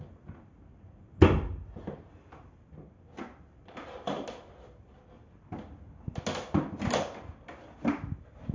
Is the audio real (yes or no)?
yes